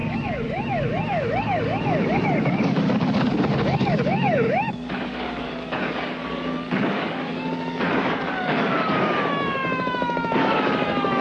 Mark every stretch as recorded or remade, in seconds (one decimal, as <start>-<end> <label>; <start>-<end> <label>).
0.0-11.2 remade

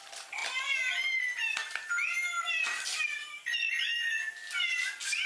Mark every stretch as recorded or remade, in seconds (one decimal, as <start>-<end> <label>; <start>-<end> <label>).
0.0-5.3 recorded

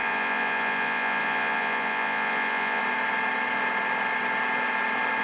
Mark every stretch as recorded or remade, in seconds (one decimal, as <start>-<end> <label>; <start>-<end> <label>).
0.0-2.8 remade; 2.8-5.2 recorded

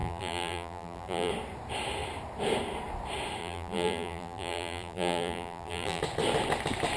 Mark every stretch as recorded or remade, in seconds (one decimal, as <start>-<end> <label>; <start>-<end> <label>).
0.0-1.3 remade; 1.3-3.4 recorded; 3.4-6.0 remade; 6.0-7.0 recorded

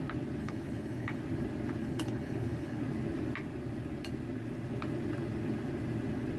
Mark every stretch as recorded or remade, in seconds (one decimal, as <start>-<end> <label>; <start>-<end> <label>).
0.0-0.4 recorded; 0.4-1.2 remade; 1.2-1.8 recorded; 1.8-2.8 remade; 2.8-6.4 recorded